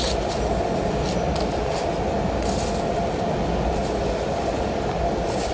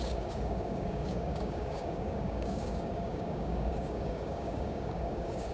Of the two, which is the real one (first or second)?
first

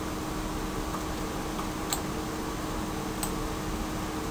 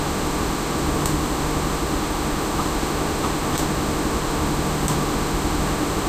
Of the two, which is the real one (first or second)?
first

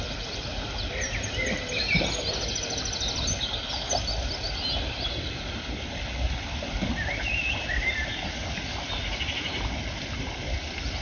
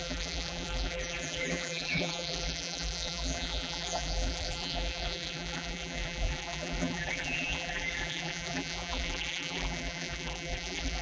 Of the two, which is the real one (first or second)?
first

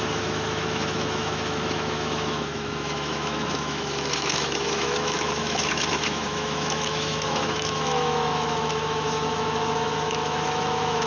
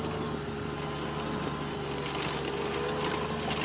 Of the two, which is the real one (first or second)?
second